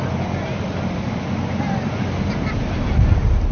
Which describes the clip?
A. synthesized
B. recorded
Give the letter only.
B